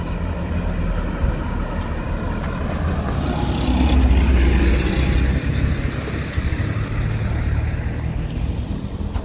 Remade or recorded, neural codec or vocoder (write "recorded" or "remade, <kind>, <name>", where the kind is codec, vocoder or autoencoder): recorded